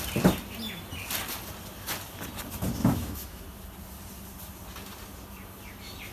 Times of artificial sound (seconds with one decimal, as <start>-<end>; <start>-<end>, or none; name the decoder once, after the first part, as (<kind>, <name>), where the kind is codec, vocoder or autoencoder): 2.8-3.4 (autoencoder, DAC-VAE)